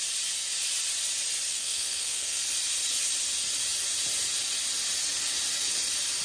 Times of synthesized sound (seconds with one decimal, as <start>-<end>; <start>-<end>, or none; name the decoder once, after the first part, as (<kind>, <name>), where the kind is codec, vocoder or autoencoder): 1.5-2.4 (codec, SNAC)